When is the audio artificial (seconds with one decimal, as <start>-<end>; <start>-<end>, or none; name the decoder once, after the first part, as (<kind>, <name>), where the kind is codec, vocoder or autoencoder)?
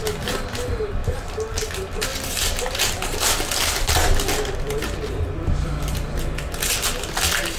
1.0-1.7 (vocoder, BigVGAN v2); 2.1-6.6